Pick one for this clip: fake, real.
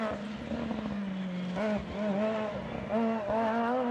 real